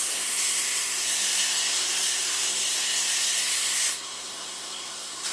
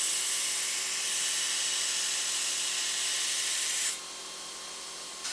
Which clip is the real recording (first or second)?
second